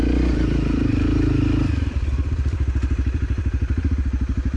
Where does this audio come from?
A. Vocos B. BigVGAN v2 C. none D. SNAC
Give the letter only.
B